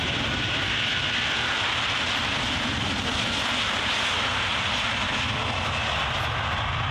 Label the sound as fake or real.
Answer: real